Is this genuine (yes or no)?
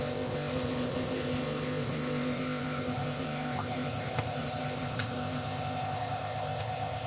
no